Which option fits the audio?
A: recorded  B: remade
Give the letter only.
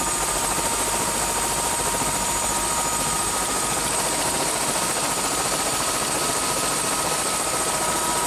B